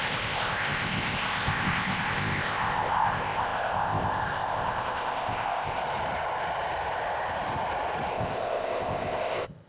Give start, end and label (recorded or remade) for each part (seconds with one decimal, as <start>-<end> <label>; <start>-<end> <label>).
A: 0.0-5.8 remade; 5.8-8.1 recorded; 8.1-9.7 remade